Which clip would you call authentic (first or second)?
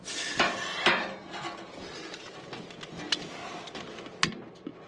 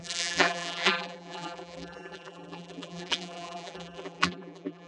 first